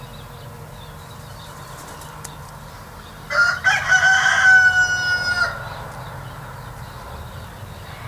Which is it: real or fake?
real